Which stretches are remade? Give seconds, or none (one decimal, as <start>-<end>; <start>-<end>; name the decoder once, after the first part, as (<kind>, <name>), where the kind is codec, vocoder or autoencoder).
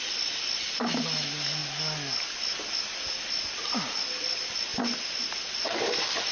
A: none